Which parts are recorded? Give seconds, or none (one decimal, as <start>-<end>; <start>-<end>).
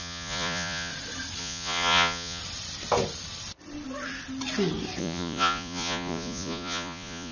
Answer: 0.9-1.4; 2.4-5.0